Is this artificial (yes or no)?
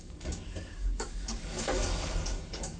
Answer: yes